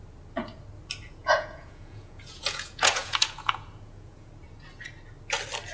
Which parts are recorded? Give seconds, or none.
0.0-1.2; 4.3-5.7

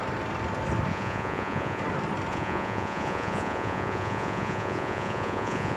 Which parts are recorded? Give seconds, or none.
0.0-0.9; 1.8-2.3

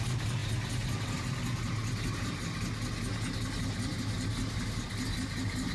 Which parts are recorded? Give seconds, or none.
0.0-5.7

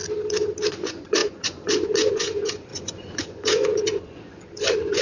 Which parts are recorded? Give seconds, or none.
0.0-0.7